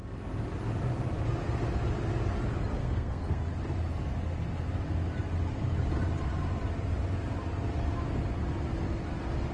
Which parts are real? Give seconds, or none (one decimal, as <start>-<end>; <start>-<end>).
0.0-2.8; 3.4-9.5